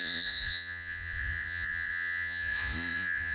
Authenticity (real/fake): fake